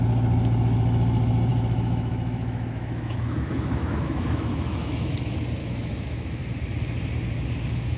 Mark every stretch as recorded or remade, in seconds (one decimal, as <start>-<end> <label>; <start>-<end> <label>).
0.0-1.5 recorded; 1.5-5.1 remade; 5.1-5.6 recorded; 5.6-6.4 remade; 6.4-8.0 recorded